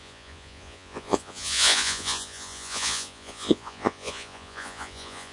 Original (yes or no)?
no